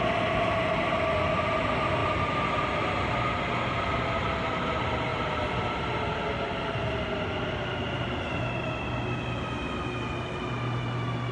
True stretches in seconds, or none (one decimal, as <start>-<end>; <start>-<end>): 0.0-11.3